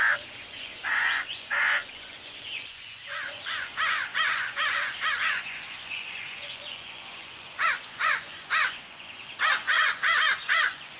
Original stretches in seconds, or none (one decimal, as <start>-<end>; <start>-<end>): none